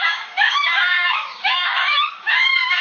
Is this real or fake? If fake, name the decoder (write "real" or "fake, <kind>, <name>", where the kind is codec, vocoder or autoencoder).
fake, codec, DAC